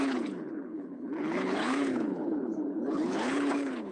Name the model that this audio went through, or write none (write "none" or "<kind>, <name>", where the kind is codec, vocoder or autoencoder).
codec, HILCodec